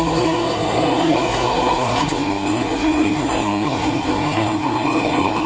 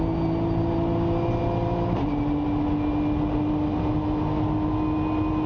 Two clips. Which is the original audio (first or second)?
second